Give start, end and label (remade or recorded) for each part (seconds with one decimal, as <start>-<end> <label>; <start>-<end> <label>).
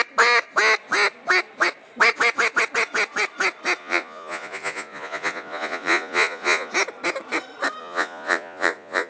0.0-3.8 recorded; 3.8-6.7 remade; 6.7-7.8 recorded; 7.8-9.1 remade